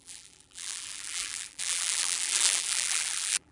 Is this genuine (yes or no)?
no